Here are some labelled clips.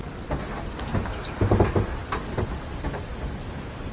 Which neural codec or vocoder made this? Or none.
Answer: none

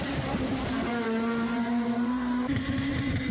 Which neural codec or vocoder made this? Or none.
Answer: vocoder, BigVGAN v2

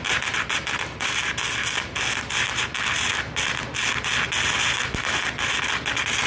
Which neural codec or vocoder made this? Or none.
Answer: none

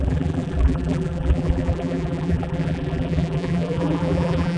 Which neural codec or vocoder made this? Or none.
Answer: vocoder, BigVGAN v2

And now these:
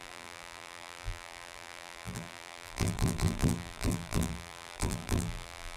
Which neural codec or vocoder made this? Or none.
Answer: vocoder, BigVGAN v2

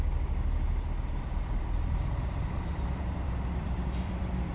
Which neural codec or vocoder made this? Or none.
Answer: vocoder, BigVGAN v2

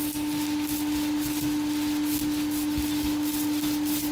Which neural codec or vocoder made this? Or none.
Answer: none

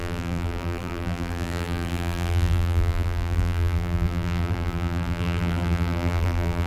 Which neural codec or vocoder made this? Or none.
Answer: vocoder, BigVGAN v2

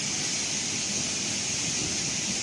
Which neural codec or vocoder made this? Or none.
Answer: none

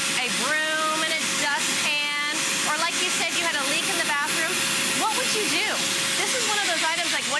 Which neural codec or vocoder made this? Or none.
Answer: none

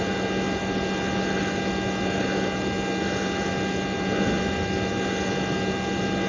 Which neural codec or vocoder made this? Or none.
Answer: none